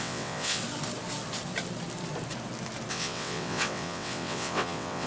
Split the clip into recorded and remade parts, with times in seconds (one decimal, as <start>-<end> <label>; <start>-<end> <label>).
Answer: 0.0-0.6 remade; 0.6-2.9 recorded; 2.9-5.1 remade